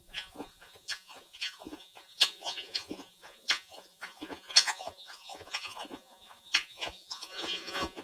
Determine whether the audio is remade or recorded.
remade